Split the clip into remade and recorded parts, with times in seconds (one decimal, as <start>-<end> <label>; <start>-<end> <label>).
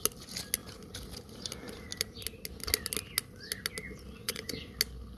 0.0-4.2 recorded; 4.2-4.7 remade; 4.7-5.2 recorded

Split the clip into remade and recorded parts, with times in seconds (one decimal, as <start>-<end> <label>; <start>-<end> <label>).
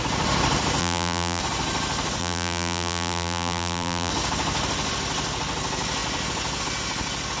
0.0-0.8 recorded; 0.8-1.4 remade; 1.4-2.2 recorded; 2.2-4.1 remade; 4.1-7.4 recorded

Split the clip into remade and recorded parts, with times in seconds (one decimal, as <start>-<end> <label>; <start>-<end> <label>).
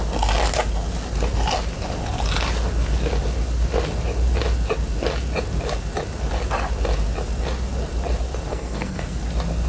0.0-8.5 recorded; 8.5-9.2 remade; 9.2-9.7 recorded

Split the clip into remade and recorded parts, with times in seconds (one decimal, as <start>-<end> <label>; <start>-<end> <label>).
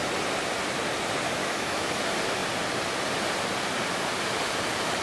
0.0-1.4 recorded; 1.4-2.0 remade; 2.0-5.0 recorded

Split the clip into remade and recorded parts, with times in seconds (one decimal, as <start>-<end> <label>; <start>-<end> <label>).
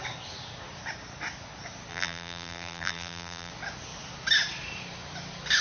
0.0-1.9 recorded; 1.9-3.5 remade; 3.5-5.6 recorded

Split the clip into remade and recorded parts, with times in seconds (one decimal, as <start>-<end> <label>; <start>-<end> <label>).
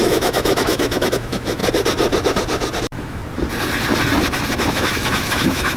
0.0-1.6 remade; 1.6-2.8 recorded; 2.8-3.2 remade; 3.2-4.7 recorded; 4.7-5.8 remade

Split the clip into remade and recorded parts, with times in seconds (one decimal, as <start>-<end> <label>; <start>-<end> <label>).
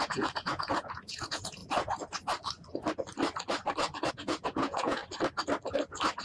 0.0-1.6 remade; 1.6-4.1 recorded; 4.1-5.0 remade; 5.0-6.2 recorded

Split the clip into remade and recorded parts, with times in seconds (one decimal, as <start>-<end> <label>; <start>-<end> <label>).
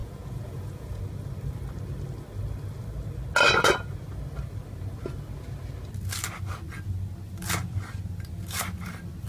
0.0-1.0 remade; 1.0-9.3 recorded